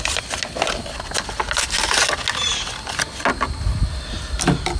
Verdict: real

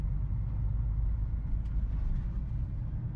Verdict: real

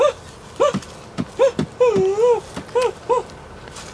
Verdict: real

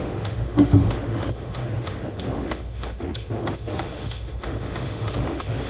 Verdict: fake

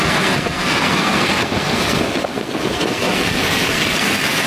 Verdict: fake